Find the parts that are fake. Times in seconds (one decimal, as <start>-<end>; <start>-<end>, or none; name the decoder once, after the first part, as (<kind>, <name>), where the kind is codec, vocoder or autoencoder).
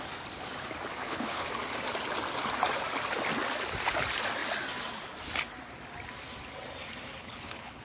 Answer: 1.0-1.5 (codec, HILCodec); 7.2-7.8